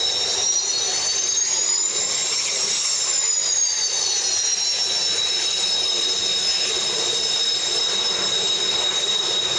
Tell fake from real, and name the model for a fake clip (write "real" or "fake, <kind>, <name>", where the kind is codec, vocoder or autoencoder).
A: real